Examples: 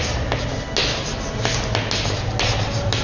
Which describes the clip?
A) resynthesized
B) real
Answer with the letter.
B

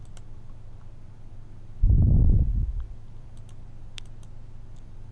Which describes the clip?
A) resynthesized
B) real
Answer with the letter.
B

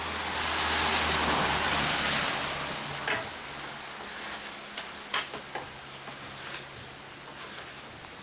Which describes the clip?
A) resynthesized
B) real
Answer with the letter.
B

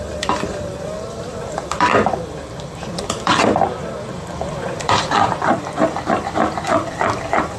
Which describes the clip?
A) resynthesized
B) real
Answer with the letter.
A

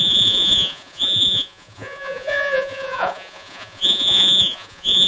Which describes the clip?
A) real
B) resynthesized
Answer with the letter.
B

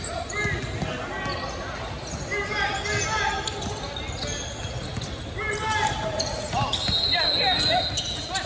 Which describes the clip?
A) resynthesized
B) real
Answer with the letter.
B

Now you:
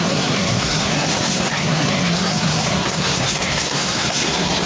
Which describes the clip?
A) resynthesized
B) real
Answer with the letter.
A